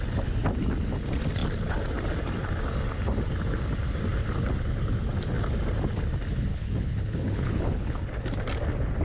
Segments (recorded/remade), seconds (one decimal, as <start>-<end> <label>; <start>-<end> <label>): 0.0-6.5 recorded; 6.5-8.1 remade; 8.1-9.0 recorded